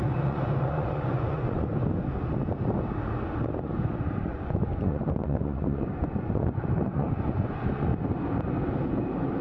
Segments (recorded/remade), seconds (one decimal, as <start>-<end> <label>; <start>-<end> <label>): 0.0-1.7 remade; 1.7-4.3 recorded; 4.3-7.9 remade; 7.9-9.4 recorded